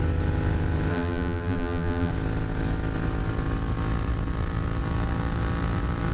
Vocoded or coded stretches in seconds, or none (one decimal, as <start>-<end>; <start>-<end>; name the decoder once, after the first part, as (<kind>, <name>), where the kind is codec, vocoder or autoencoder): 0.9-2.1 (vocoder, BigVGAN v2)